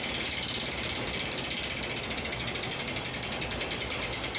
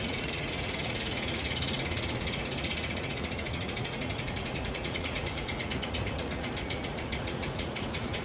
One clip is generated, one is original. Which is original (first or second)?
first